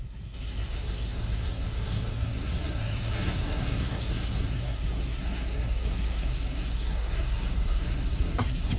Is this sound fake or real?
fake